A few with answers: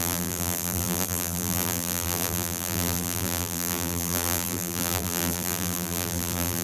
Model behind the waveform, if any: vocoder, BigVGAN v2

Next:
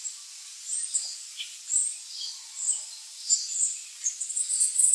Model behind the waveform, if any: none